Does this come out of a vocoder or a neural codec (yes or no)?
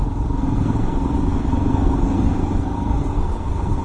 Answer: yes